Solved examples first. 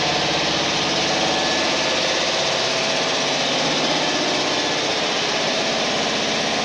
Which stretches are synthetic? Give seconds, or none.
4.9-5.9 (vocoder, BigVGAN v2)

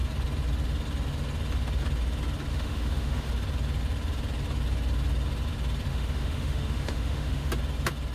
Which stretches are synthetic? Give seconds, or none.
2.5-3.3 (autoencoder, DAC-VAE); 5.9-7.5